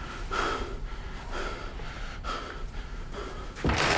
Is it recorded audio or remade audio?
remade